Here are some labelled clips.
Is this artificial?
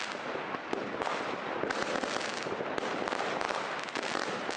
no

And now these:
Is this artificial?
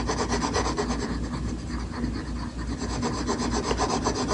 no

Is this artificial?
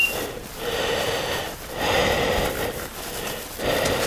no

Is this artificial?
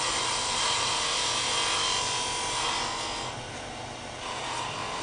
no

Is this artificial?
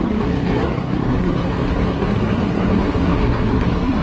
yes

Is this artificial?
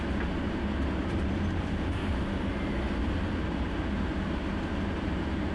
no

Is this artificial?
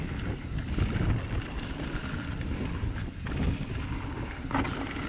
no